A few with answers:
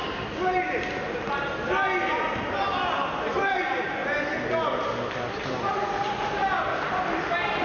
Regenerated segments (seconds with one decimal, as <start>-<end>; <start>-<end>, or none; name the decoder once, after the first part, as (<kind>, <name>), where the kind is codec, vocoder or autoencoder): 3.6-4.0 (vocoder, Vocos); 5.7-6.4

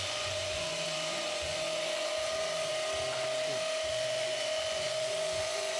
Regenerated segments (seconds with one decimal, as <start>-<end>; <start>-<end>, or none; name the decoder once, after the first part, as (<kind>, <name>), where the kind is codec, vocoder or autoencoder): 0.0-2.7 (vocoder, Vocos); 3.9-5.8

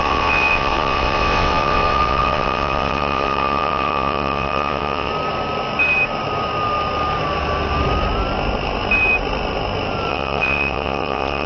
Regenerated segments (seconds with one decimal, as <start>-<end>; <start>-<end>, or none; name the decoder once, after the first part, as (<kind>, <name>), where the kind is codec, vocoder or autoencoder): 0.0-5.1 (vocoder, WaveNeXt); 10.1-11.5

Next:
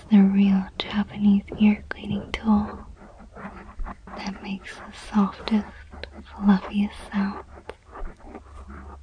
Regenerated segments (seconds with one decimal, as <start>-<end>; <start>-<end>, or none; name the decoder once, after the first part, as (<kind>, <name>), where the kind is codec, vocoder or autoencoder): none